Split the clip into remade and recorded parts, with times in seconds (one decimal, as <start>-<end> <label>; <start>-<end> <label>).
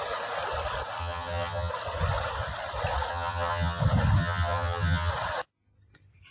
0.0-1.0 recorded; 1.0-1.7 remade; 1.7-3.1 recorded; 3.1-3.8 remade; 3.8-4.2 recorded; 4.2-5.1 remade; 5.1-6.3 recorded